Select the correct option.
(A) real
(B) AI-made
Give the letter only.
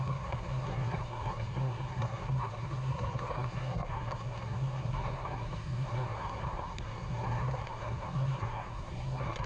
B